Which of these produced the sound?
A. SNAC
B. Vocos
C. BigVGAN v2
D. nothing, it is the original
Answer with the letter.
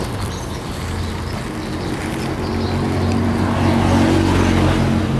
D